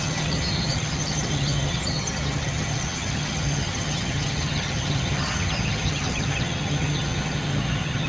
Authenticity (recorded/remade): remade